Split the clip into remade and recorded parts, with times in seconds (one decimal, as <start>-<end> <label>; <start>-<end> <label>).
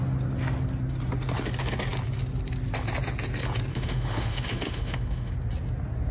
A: 0.0-3.7 recorded; 3.7-5.3 remade; 5.3-6.1 recorded